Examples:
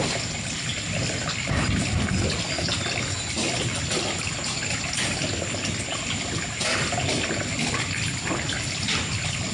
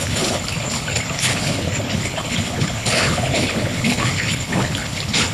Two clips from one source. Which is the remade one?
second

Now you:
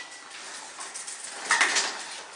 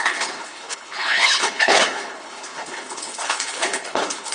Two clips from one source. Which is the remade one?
second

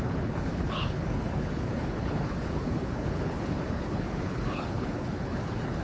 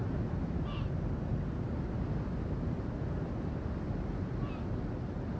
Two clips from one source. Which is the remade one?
first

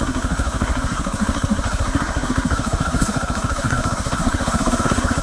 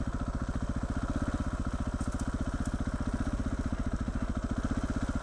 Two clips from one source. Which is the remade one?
first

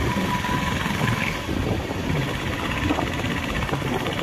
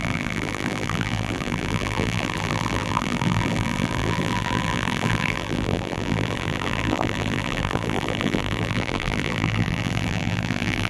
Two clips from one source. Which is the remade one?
second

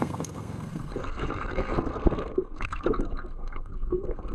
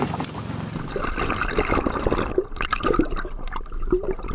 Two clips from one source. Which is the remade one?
first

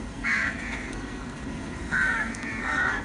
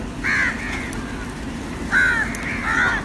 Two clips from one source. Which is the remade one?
first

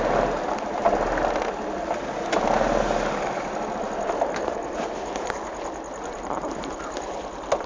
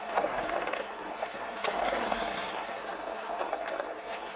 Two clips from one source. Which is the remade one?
second